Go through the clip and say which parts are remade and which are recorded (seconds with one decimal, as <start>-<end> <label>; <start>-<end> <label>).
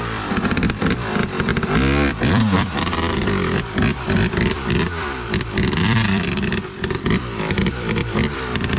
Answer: 0.0-8.8 remade